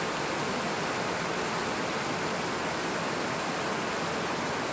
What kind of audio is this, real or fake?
real